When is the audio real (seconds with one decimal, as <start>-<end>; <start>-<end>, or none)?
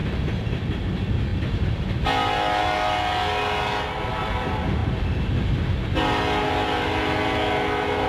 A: 0.7-1.3; 2.3-4.8; 5.3-8.1